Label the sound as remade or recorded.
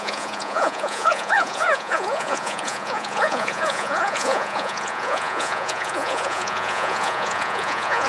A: remade